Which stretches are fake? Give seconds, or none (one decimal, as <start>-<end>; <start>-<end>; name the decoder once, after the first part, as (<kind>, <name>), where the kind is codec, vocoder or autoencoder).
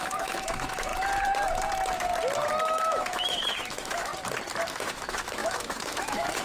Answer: 0.0-0.9 (autoencoder, DAC-VAE); 2.6-4.1; 4.7-6.4